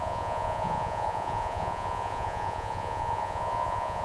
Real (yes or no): no